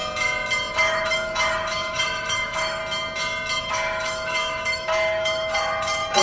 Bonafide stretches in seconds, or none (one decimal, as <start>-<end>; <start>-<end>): 0.0-0.7; 2.8-3.6

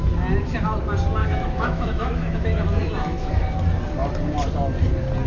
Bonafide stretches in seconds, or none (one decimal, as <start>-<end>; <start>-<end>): 0.0-1.2; 3.3-5.3

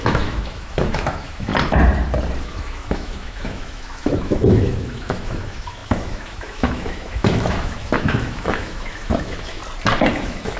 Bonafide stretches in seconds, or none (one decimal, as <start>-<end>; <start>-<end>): 1.5-2.4; 9.6-10.1

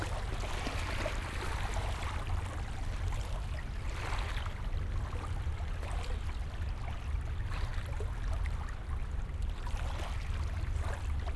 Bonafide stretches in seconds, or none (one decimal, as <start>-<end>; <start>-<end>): 0.0-11.4

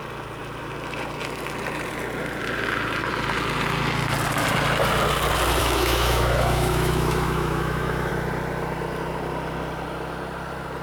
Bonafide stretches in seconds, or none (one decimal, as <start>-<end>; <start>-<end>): 0.0-5.6; 8.1-10.8

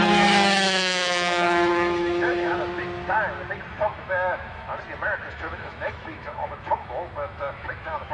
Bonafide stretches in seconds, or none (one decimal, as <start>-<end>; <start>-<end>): 2.5-3.7; 4.7-5.3

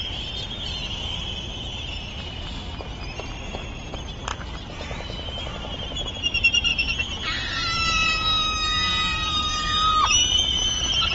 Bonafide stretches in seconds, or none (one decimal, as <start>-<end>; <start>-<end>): 0.0-11.1